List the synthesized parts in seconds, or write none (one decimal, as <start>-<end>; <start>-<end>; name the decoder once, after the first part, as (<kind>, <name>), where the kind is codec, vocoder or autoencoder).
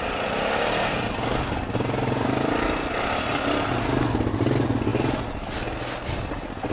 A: none